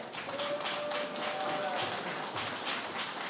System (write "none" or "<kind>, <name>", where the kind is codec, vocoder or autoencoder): none